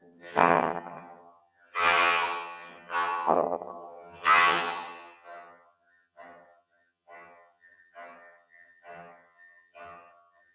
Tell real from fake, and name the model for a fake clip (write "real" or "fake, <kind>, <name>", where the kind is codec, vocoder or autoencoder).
fake, vocoder, HiFi-GAN